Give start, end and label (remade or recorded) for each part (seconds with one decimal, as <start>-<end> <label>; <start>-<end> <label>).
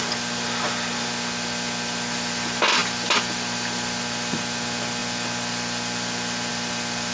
0.0-2.8 recorded; 2.8-4.0 remade; 4.0-7.1 recorded